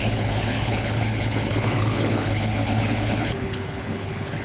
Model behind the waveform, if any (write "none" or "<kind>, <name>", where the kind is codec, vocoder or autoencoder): codec, HILCodec